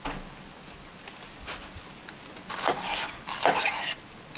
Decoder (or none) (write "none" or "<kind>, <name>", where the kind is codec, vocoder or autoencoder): none